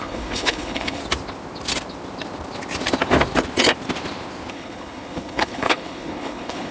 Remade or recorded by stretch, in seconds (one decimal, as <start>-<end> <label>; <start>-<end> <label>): 0.0-1.0 remade; 1.0-4.5 recorded; 4.5-6.7 remade